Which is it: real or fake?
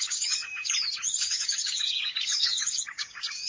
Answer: fake